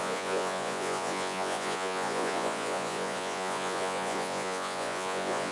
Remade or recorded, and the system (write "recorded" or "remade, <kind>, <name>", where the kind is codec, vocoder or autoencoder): remade, vocoder, Vocos